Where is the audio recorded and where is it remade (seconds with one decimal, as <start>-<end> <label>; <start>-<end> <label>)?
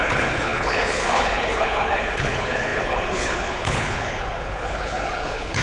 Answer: 0.0-5.6 remade